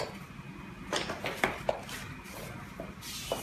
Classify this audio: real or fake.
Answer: real